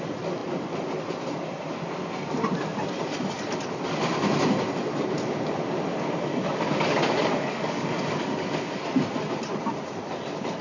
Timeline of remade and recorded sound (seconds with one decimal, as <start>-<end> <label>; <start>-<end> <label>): 0.0-6.3 recorded; 6.3-8.8 remade; 8.8-10.6 recorded